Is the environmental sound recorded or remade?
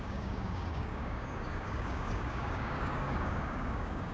remade